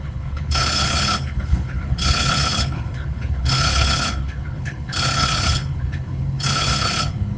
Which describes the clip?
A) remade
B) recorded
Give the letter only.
A